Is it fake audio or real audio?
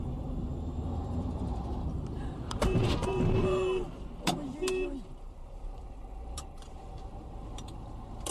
fake